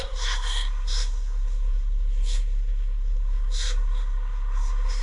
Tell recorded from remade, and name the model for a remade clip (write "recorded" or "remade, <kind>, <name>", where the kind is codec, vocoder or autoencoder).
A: remade, codec, SNAC